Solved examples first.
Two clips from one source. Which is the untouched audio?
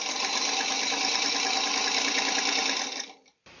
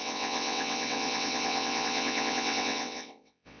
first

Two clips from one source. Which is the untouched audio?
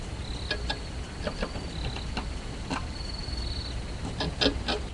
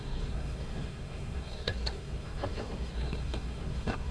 first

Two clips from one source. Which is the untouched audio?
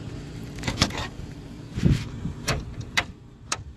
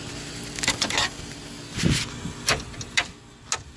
second